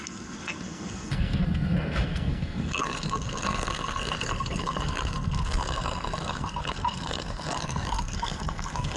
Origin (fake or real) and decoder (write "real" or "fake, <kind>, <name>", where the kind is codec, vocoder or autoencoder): fake, codec, SNAC